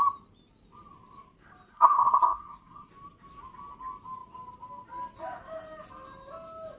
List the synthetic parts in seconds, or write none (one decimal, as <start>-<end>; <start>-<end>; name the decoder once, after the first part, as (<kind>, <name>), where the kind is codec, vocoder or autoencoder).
1.7-2.9 (codec, SNAC)